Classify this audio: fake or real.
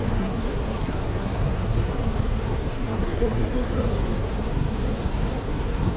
fake